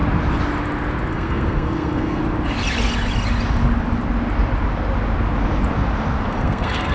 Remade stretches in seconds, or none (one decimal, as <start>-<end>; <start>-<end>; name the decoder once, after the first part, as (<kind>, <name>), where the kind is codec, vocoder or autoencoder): 1.1-2.2 (codec, SNAC); 6.3-6.9